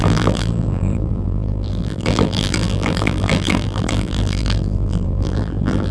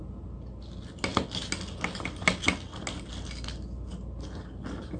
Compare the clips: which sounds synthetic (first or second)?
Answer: first